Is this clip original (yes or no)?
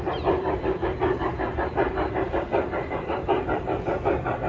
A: yes